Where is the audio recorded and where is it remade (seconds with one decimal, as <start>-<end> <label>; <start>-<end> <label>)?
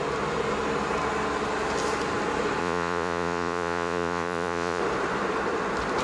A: 0.0-2.6 recorded; 2.6-4.8 remade; 4.8-6.0 recorded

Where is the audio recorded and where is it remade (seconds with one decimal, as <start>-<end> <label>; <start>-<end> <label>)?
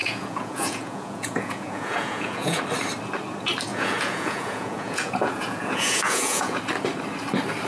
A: 0.0-2.6 remade; 2.6-3.7 recorded; 3.7-6.6 remade; 6.6-7.7 recorded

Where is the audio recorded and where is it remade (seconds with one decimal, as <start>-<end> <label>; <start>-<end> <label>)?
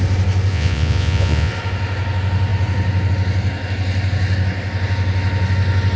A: 0.0-0.5 recorded; 0.5-1.5 remade; 1.5-6.0 recorded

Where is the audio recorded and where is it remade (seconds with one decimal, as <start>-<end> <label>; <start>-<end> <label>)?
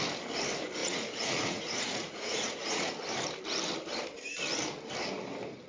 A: 0.0-0.8 recorded; 0.8-2.9 remade; 2.9-5.7 recorded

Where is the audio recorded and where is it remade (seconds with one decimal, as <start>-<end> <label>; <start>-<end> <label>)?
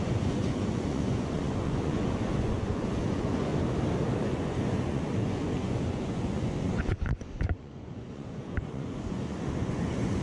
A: 0.0-3.5 remade; 3.5-4.2 recorded; 4.2-10.2 remade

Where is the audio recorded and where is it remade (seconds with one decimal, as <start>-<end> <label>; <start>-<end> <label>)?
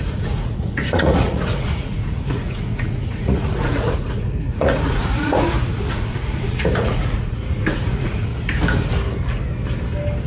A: 0.0-8.3 remade; 8.3-10.3 recorded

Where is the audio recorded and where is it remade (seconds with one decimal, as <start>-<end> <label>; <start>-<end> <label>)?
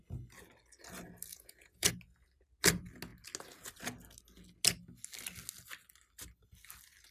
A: 0.0-1.3 recorded; 1.3-1.9 remade; 1.9-7.1 recorded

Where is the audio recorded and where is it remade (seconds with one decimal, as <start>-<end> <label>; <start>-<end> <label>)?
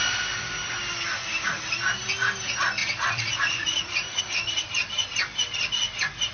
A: 0.0-2.8 recorded; 2.8-4.2 remade; 4.2-6.3 recorded